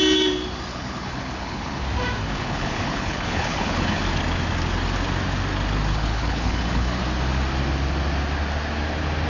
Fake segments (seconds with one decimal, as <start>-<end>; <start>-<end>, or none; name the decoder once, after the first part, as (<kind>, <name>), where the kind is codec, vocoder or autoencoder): 0.7-1.8 (codec, HILCodec); 2.2-4.0; 5.9-7.0